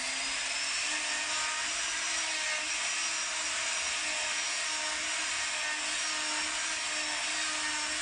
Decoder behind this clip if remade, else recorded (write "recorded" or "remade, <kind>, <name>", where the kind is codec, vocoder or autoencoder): recorded